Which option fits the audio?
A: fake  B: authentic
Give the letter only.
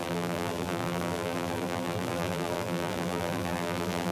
A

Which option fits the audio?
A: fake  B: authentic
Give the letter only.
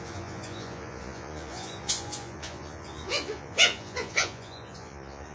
A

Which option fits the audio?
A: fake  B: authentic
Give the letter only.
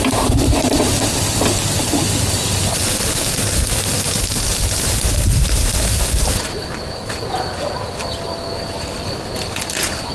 B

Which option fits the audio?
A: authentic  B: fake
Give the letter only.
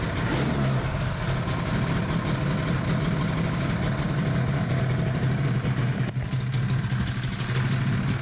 A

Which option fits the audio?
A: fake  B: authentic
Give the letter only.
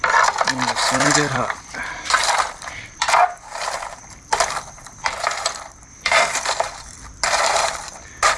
A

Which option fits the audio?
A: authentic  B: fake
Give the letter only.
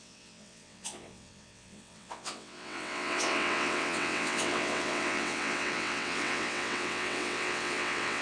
B